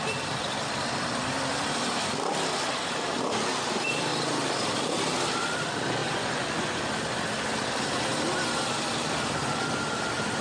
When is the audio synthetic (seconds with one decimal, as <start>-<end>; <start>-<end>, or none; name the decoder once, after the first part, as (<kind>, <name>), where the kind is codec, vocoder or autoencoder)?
6.0-6.8 (vocoder, Vocos)